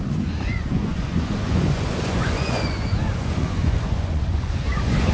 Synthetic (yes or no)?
yes